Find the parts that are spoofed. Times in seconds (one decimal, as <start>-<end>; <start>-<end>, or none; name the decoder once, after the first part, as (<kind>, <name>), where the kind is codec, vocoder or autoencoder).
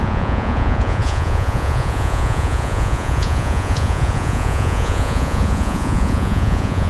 0.0-6.9 (vocoder, Vocos)